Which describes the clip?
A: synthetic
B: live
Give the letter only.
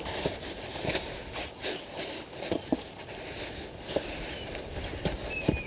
B